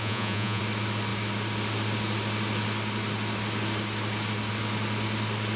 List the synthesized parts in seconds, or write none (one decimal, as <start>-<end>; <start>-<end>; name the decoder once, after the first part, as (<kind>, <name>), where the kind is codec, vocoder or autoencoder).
0.0-0.6 (vocoder, Vocos)